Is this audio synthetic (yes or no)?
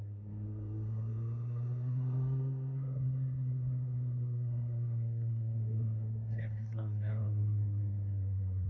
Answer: yes